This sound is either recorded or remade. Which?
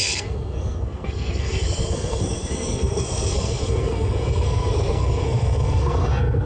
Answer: remade